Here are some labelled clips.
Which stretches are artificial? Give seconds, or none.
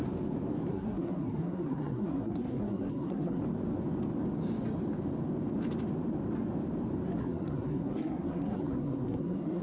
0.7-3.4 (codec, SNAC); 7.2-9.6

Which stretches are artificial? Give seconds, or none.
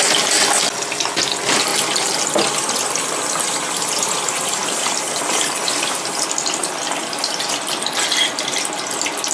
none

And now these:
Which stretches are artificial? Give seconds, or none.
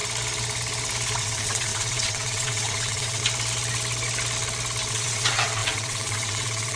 1.2-3.2 (vocoder, WaveNeXt); 4.9-6.8